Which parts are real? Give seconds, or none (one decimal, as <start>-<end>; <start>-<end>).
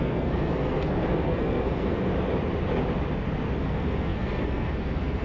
2.1-3.6